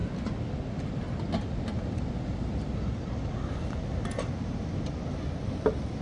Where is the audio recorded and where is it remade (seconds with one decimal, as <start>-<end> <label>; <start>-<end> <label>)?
0.0-1.9 recorded; 1.9-2.9 remade; 2.9-3.5 recorded; 3.5-6.0 remade